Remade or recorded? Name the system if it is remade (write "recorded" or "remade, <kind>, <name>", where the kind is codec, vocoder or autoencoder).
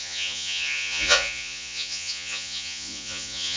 remade, vocoder, Vocos